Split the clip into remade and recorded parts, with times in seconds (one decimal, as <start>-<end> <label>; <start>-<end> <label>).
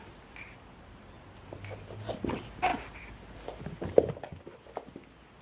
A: 0.0-5.4 recorded